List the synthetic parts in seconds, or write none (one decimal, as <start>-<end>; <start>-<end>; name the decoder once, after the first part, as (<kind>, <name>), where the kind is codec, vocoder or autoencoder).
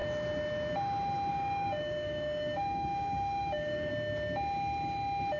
1.3-3.9 (codec, DAC)